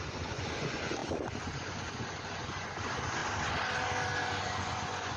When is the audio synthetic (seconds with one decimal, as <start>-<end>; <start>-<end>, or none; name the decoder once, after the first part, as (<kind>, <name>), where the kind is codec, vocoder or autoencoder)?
0.0-3.2 (vocoder, Vocos); 4.4-5.2